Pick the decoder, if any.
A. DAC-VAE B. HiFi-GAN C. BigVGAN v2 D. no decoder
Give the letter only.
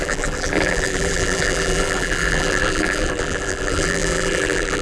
C